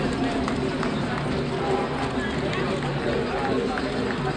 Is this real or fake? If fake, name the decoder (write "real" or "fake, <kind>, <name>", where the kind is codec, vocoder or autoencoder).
real